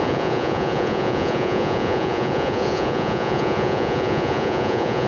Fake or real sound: fake